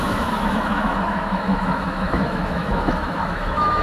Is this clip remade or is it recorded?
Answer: remade